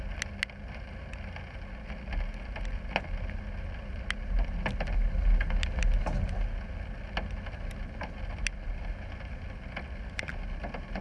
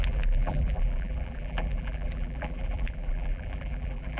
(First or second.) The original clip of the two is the first